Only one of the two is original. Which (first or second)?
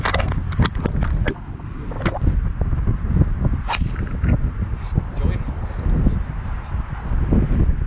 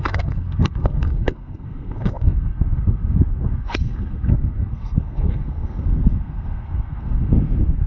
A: first